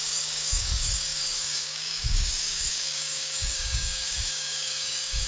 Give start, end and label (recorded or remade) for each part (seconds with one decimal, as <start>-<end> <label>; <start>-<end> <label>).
0.0-5.3 remade